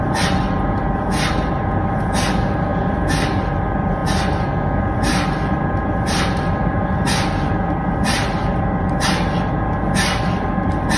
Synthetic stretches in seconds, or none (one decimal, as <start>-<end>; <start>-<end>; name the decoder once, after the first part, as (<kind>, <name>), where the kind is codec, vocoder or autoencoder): 0.0-4.0 (vocoder, BigVGAN v2); 4.8-11.0